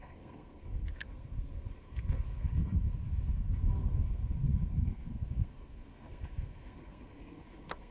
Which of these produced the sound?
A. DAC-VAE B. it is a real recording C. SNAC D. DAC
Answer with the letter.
C